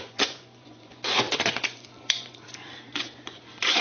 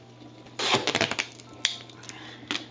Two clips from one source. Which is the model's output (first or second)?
first